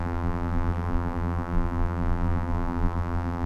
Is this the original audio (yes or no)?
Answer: no